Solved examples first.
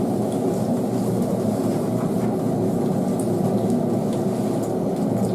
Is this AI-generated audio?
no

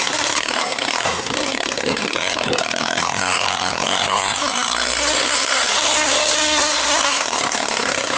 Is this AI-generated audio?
yes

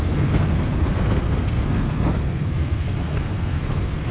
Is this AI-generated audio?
yes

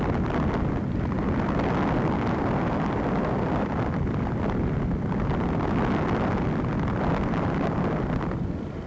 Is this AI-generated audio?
no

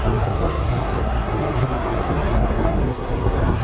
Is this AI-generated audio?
yes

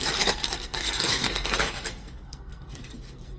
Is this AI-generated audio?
yes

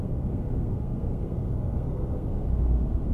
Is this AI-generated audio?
yes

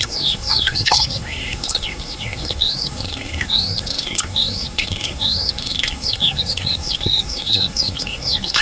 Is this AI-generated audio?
yes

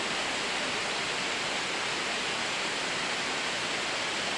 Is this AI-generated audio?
no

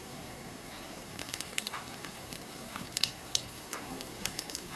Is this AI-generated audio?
yes